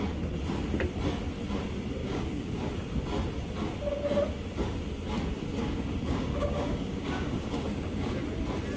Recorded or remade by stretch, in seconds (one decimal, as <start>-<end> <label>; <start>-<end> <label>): 0.0-2.0 recorded; 2.0-2.7 remade; 2.7-5.5 recorded; 5.5-8.2 remade; 8.2-8.8 recorded